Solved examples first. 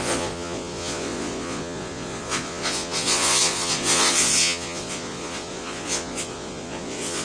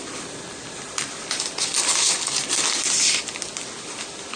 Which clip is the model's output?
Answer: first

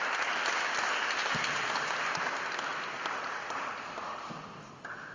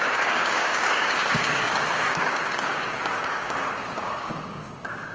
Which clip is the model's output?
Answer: second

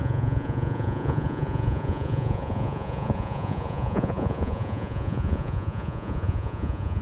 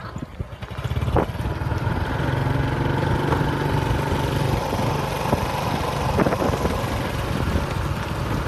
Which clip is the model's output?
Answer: first